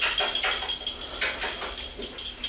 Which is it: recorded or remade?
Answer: recorded